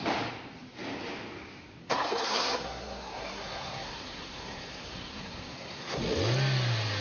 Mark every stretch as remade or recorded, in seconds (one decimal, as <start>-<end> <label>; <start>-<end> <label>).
0.0-1.8 recorded; 1.8-6.0 remade; 6.0-7.0 recorded